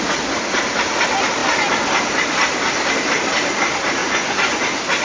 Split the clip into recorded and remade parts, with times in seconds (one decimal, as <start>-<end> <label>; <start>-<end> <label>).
0.0-4.0 recorded; 4.0-4.6 remade; 4.6-5.0 recorded